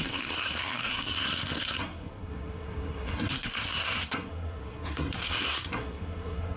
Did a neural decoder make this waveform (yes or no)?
yes